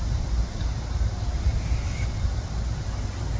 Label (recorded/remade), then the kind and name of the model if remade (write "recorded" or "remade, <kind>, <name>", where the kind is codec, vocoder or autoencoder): recorded